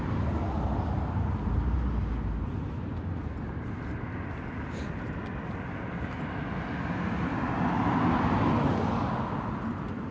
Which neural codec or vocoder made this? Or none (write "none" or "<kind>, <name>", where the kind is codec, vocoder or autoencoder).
none